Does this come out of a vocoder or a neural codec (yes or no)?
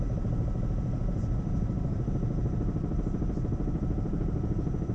yes